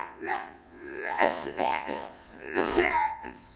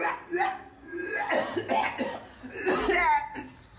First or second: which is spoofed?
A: first